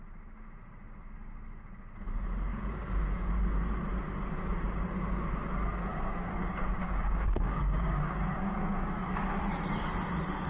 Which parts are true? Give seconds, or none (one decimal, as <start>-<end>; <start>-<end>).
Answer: 0.0-2.5; 3.3-5.9; 9.3-10.5